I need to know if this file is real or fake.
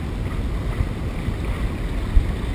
real